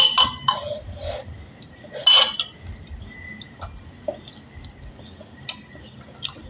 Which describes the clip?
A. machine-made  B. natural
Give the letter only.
B